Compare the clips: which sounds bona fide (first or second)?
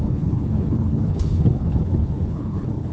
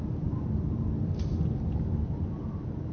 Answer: second